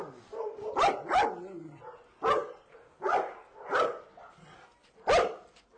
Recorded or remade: recorded